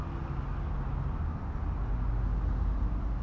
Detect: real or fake real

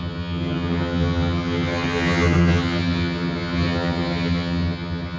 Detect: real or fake fake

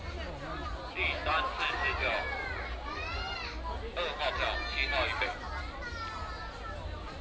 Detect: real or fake real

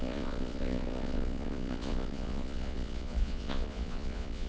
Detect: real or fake fake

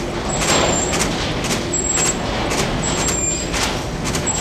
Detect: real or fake real